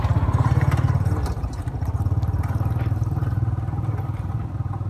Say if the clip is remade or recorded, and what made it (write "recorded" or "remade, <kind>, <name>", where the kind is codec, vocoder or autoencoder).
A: remade, vocoder, BigVGAN v2